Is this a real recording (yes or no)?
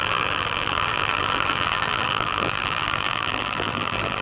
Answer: no